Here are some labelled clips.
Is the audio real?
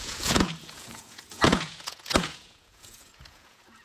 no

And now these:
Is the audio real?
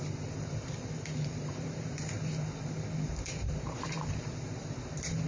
no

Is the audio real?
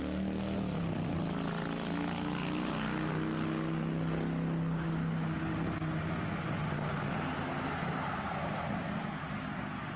yes